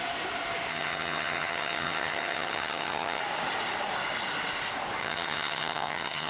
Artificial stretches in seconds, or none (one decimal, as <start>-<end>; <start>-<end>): 0.7-3.2; 5.0-6.3